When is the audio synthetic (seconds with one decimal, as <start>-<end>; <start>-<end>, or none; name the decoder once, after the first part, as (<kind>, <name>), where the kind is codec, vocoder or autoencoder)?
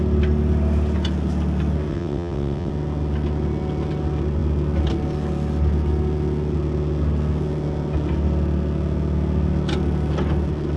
1.9-2.7 (vocoder, WaveNeXt)